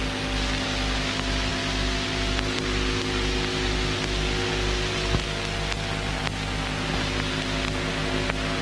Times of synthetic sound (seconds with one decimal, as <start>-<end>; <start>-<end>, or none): none